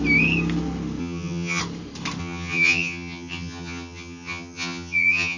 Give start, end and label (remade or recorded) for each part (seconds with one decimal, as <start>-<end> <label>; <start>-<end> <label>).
0.0-1.0 recorded; 1.0-1.6 remade; 1.6-2.2 recorded; 2.2-5.4 remade

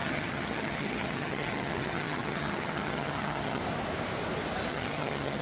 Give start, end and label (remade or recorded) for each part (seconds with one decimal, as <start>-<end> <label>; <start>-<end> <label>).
0.0-3.6 remade; 3.6-4.7 recorded; 4.7-5.4 remade

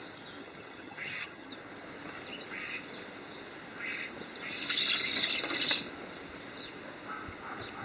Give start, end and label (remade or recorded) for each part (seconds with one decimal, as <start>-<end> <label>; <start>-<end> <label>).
0.0-0.4 recorded; 0.4-1.5 remade; 1.5-7.8 recorded

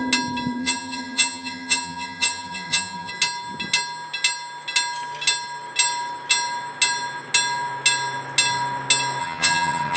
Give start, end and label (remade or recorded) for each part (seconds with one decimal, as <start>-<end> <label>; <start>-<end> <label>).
0.0-0.6 recorded; 0.6-3.1 remade; 3.1-9.2 recorded; 9.2-10.0 remade

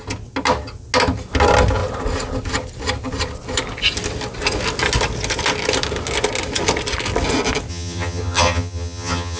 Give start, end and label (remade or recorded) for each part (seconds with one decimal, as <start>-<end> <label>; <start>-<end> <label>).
0.0-7.7 recorded; 7.7-9.4 remade

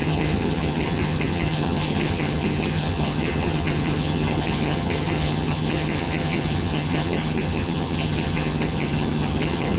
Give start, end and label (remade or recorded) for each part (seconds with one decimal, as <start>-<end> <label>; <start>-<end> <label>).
0.0-9.8 remade

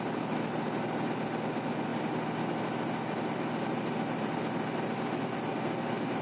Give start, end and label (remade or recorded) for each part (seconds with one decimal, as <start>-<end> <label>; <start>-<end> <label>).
0.0-6.2 recorded